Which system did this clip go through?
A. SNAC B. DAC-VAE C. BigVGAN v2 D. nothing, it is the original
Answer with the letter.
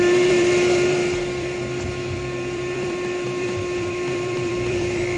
C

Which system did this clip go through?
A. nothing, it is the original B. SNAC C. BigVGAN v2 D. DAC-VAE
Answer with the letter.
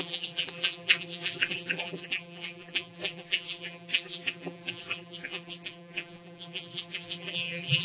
C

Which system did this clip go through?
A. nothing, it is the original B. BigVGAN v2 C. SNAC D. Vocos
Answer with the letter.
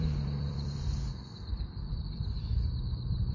B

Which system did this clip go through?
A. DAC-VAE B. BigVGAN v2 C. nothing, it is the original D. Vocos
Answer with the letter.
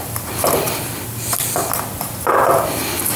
C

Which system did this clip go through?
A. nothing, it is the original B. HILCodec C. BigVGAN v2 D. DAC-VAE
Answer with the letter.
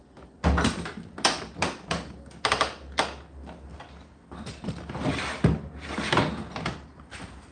A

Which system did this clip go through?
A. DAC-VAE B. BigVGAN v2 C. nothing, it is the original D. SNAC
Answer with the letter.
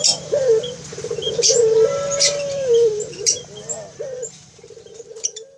B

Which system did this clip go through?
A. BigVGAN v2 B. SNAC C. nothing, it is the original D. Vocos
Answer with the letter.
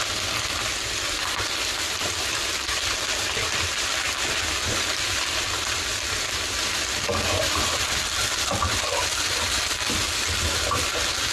A